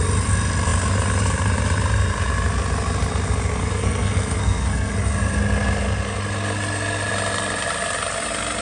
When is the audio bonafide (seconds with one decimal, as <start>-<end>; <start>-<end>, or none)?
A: 0.0-3.6; 4.9-8.6